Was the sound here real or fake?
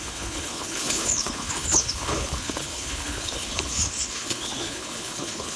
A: fake